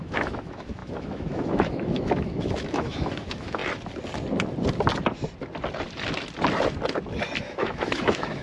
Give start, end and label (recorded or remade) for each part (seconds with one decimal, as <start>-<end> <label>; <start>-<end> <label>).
0.0-3.6 remade; 3.6-7.4 recorded; 7.4-8.4 remade